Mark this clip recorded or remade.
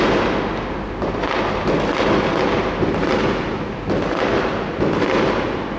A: recorded